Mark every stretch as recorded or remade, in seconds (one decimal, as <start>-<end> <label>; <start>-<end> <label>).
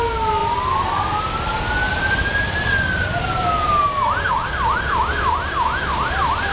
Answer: 0.0-6.5 recorded